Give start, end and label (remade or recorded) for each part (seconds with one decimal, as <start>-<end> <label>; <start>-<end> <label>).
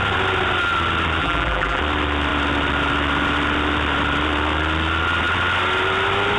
0.0-1.2 recorded; 1.2-1.8 remade; 1.8-6.4 recorded